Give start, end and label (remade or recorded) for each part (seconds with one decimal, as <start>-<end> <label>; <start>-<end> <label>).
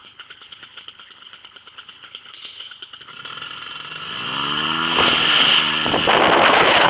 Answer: 0.0-3.1 remade; 3.1-6.5 recorded; 6.5-6.9 remade